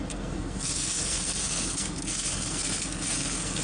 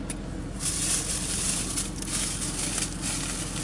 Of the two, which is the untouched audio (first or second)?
second